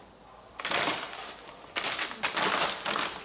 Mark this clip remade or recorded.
recorded